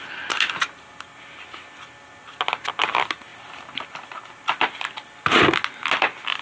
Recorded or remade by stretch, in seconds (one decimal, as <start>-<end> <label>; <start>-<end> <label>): 0.0-6.4 recorded